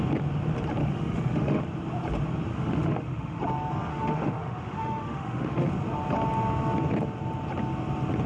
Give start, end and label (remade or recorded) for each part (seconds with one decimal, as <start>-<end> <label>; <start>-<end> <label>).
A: 0.0-0.8 recorded; 0.8-1.6 remade; 1.6-2.5 recorded; 2.5-3.4 remade; 3.4-3.9 recorded; 3.9-5.7 remade; 5.7-8.3 recorded